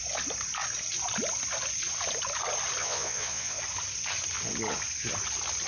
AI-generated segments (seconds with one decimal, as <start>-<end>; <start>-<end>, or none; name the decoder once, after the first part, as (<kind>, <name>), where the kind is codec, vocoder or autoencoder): 2.8-3.6 (vocoder, Vocos)

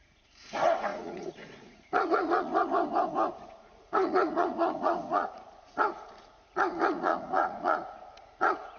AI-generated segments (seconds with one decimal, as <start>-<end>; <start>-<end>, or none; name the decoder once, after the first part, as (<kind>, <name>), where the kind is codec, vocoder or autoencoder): 0.0-2.5 (vocoder, Vocos); 3.3-8.8

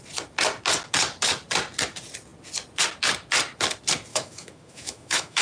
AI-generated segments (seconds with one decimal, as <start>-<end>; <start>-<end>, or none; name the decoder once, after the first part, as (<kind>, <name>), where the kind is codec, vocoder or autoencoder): 4.1-5.4 (autoencoder, DAC-VAE)

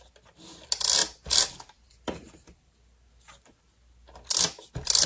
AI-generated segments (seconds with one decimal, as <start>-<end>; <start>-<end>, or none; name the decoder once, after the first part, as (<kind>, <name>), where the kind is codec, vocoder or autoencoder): none

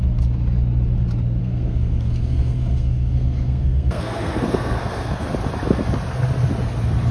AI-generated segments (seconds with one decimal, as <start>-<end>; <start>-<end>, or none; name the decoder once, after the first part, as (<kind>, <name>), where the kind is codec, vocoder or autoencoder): 1.4-5.2 (codec, SNAC)

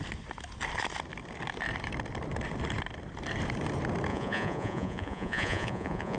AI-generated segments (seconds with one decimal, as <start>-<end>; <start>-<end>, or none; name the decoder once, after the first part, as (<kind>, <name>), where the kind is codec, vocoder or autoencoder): 4.1-6.2 (vocoder, Vocos)

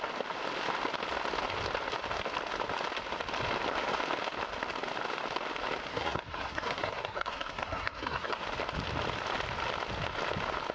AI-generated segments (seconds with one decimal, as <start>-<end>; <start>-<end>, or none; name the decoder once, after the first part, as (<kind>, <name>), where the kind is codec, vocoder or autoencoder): 5.9-8.4 (codec, SNAC)